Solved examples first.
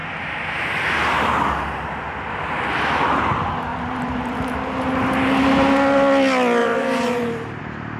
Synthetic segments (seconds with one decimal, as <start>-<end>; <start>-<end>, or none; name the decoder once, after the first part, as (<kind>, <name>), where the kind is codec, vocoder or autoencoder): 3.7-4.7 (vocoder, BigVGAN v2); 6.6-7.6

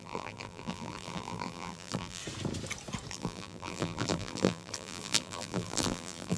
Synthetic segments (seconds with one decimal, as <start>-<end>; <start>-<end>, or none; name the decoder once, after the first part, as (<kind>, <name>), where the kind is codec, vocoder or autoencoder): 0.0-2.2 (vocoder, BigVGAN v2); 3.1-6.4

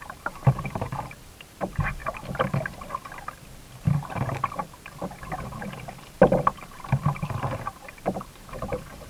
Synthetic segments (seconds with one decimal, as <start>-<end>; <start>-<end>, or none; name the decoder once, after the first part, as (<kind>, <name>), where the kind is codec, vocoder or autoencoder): 0.0-2.0 (vocoder, BigVGAN v2); 6.4-9.1

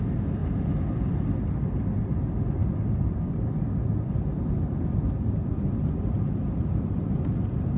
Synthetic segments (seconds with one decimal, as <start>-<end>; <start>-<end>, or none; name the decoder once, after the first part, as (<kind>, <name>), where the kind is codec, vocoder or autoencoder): none